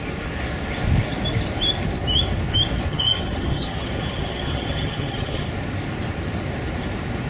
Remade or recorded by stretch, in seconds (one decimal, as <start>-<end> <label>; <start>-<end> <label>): 0.0-2.9 recorded; 2.9-5.5 remade; 5.5-7.3 recorded

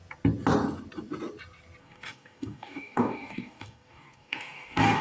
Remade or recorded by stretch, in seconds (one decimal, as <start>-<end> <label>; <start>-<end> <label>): 0.0-1.8 recorded; 1.8-5.0 remade

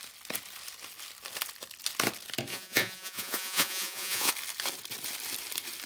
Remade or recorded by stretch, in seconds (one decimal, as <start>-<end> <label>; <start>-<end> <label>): 0.0-2.5 recorded; 2.5-4.3 remade; 4.3-5.9 recorded

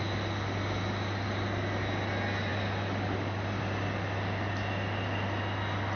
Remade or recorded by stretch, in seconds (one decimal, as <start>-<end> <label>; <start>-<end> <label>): 0.0-6.0 recorded